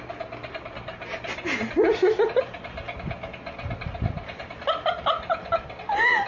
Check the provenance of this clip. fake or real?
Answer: real